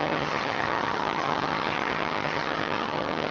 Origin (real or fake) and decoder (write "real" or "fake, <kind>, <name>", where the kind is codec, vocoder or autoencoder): fake, vocoder, HiFi-GAN